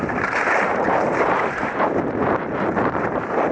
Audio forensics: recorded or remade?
remade